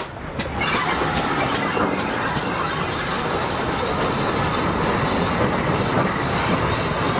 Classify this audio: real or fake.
real